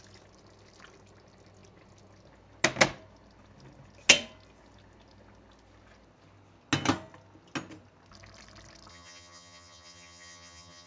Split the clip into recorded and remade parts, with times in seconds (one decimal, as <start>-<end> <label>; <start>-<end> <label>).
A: 0.0-8.9 recorded; 8.9-10.9 remade